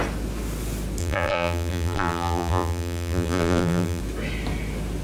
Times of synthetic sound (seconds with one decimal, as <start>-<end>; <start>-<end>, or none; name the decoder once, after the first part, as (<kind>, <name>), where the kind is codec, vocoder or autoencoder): 1.0-4.0 (vocoder, BigVGAN v2)